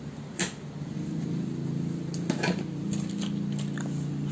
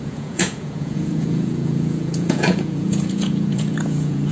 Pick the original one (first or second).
first